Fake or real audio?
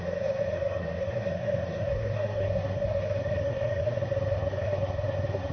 fake